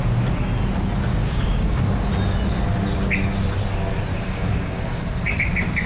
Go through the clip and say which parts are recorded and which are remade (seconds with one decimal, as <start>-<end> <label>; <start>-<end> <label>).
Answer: 0.0-1.1 recorded; 1.1-1.8 remade; 1.8-4.1 recorded; 4.1-5.0 remade; 5.0-5.9 recorded